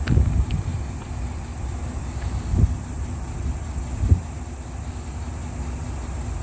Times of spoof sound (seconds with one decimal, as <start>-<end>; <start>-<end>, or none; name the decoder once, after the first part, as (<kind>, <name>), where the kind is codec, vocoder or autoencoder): none